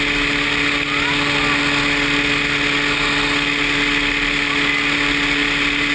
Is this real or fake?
real